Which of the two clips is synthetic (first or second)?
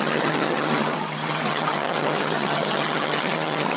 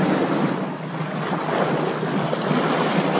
first